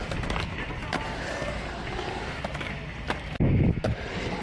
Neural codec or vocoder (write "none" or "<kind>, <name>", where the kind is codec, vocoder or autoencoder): none